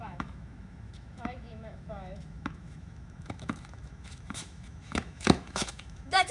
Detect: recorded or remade remade